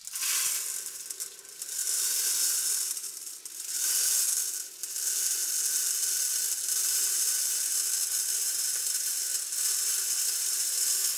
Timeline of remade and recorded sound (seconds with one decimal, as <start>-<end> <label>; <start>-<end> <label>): 0.0-11.2 recorded